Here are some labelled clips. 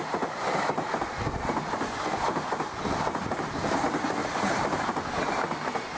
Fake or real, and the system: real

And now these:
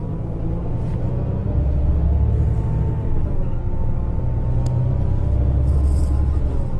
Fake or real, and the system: real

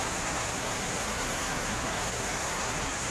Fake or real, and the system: fake, codec, SNAC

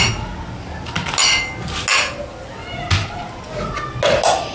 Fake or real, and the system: real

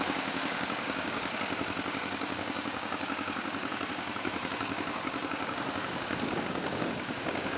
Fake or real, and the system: fake, codec, DAC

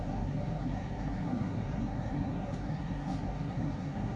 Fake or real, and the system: fake, codec, SNAC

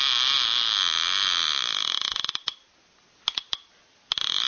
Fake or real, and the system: real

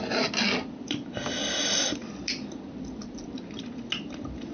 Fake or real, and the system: real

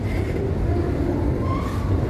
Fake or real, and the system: real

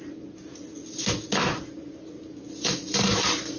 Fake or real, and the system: real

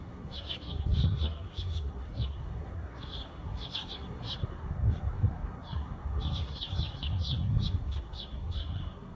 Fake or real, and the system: fake, codec, SNAC